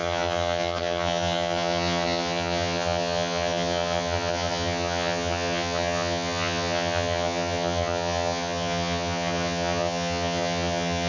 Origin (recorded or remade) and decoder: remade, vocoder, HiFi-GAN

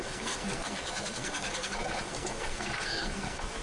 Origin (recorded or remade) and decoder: remade, codec, SNAC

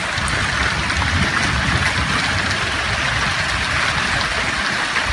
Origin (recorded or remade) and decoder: recorded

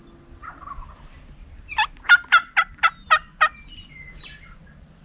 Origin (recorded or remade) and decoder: recorded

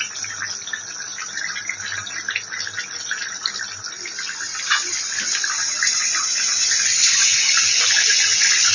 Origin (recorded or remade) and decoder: recorded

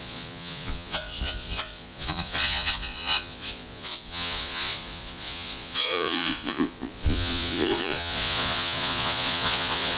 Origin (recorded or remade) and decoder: remade, vocoder, Vocos